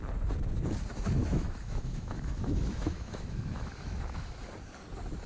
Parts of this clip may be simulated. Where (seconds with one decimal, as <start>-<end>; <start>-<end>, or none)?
1.2-4.4